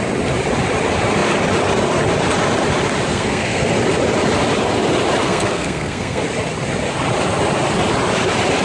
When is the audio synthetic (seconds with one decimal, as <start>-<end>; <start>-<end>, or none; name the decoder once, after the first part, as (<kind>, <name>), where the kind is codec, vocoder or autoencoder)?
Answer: 3.1-3.7 (codec, SNAC); 5.2-6.2